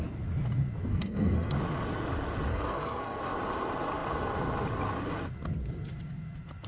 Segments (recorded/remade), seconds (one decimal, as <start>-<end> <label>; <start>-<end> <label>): 0.0-0.9 recorded; 0.9-1.5 remade; 1.5-2.5 recorded; 2.5-3.2 remade; 3.2-6.7 recorded